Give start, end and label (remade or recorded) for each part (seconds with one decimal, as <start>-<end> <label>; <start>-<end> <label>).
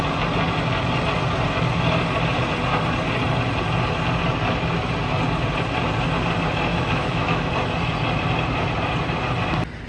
0.0-6.7 recorded; 6.7-7.5 remade; 7.5-9.9 recorded